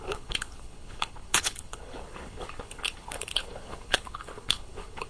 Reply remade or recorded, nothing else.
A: remade